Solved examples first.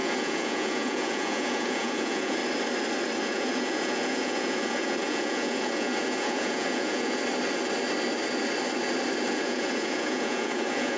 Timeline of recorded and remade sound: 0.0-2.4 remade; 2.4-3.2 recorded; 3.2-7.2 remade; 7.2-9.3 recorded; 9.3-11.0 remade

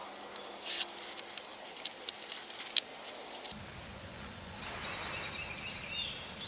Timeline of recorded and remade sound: 0.0-3.9 recorded; 3.9-4.6 remade; 4.6-6.5 recorded